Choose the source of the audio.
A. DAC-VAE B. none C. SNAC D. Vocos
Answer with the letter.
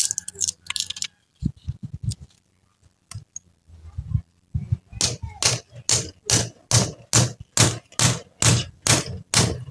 B